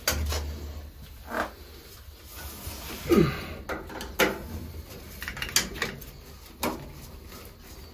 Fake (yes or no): no